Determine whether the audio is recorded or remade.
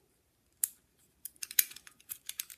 remade